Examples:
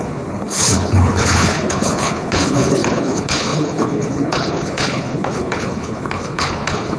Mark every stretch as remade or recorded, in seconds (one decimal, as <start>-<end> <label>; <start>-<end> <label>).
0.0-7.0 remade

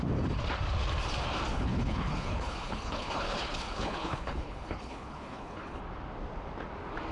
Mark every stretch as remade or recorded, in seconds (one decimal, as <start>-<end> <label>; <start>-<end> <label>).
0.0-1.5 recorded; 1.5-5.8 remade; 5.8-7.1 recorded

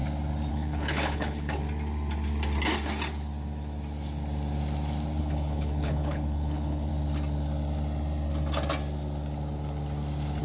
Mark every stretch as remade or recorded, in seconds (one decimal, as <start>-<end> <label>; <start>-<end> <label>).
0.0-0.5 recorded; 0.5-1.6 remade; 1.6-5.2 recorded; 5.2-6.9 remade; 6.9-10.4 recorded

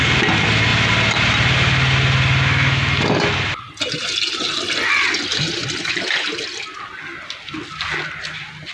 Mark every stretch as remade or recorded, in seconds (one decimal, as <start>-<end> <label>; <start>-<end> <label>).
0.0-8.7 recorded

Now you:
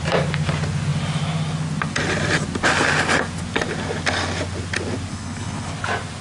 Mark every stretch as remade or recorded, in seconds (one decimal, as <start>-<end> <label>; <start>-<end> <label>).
0.0-5.1 recorded; 5.1-5.7 remade; 5.7-6.2 recorded

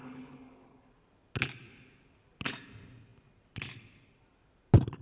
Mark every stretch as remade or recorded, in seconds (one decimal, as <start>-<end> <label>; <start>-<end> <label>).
0.0-0.9 remade; 0.9-5.0 recorded

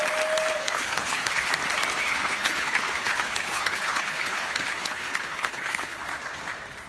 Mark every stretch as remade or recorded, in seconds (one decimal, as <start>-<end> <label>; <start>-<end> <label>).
0.0-0.6 recorded; 0.6-1.5 remade; 1.5-1.9 recorded; 1.9-6.0 remade; 6.0-6.9 recorded

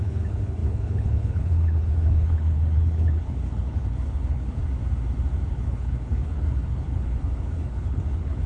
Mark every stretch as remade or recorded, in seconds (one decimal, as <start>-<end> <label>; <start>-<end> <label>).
0.0-4.6 remade; 4.6-5.5 recorded; 5.5-8.5 remade